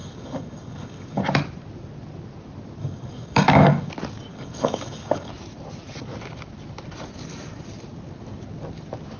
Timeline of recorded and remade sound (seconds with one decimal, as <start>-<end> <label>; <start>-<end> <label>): 0.0-1.2 remade; 1.2-2.8 recorded; 2.8-3.9 remade; 3.9-4.3 recorded; 4.3-5.3 remade; 5.3-9.2 recorded

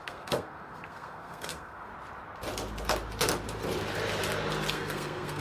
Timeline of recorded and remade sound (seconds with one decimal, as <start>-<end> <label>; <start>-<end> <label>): 0.0-1.9 remade; 1.9-4.7 recorded; 4.7-5.4 remade

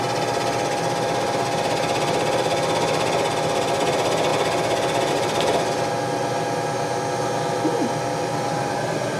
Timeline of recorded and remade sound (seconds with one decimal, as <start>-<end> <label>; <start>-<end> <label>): 0.0-9.2 recorded

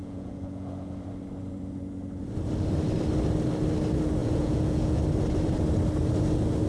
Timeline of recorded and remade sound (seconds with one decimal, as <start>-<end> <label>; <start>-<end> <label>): 0.0-0.9 remade; 0.9-4.2 recorded; 4.2-5.0 remade; 5.0-6.7 recorded

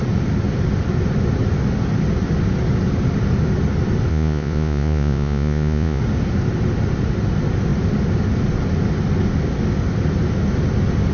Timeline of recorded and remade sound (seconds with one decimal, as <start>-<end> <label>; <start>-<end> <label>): 0.0-4.1 recorded; 4.1-6.0 remade; 6.0-11.1 recorded